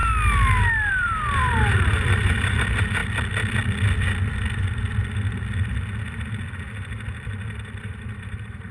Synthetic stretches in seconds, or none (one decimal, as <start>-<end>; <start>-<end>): 0.9-3.0; 7.8-8.7